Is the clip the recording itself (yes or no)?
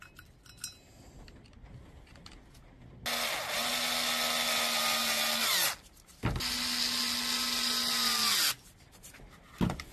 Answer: yes